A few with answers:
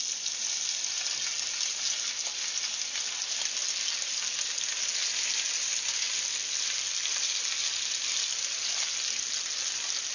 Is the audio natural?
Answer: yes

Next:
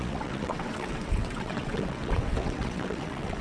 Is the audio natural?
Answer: no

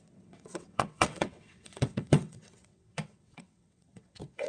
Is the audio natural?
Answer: no